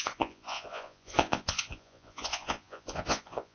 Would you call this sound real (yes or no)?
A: no